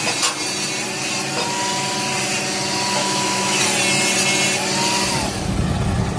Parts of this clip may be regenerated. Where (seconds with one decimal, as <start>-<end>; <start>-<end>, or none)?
3.0-3.6